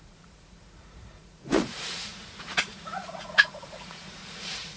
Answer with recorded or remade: remade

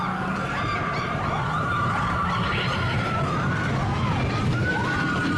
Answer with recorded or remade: recorded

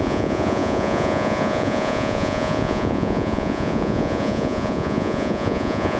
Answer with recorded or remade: remade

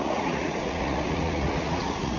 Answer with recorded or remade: remade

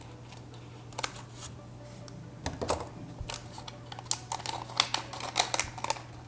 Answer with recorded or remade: recorded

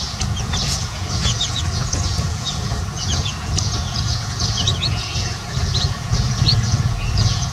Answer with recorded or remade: remade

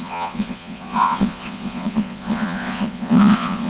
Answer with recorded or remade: remade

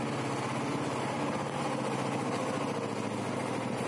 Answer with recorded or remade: recorded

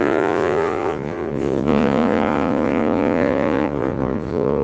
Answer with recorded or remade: remade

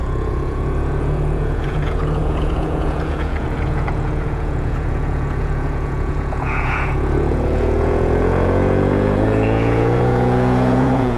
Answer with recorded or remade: remade